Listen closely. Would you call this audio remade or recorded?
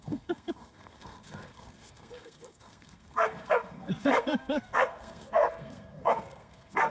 remade